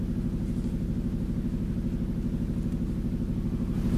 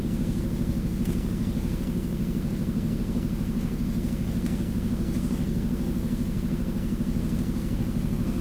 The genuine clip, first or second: first